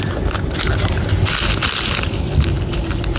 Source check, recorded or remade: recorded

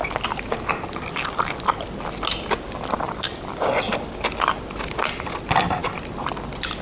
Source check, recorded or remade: recorded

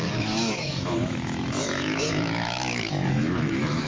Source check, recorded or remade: remade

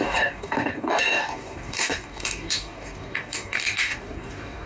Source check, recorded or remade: remade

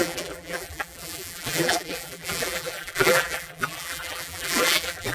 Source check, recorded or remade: remade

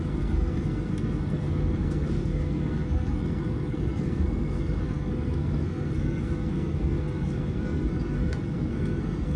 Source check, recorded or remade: remade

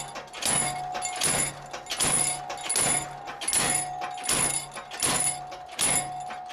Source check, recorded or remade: recorded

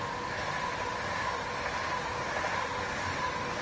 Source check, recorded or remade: recorded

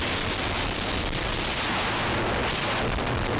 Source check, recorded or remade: recorded